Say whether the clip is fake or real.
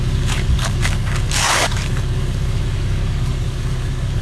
fake